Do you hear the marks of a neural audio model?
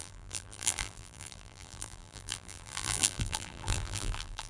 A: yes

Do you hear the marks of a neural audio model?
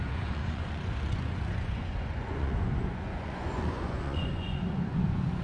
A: yes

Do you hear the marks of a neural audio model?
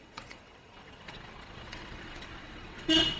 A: yes